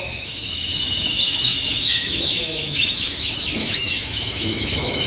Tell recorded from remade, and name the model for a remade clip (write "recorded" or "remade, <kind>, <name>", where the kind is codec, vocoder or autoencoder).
remade, autoencoder, DAC-VAE